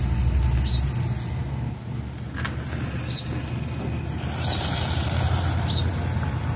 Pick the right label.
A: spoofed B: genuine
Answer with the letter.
B